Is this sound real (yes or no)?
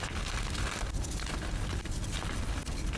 yes